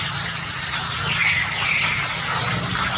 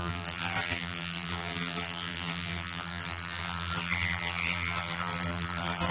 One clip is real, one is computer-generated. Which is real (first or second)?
first